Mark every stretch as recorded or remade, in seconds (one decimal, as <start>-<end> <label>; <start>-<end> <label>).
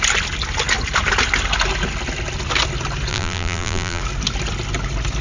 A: 0.0-3.1 recorded; 3.1-4.0 remade; 4.0-5.2 recorded